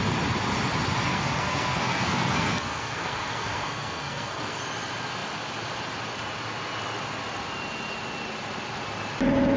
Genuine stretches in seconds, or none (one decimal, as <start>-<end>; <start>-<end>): 0.0-1.1; 4.6-9.6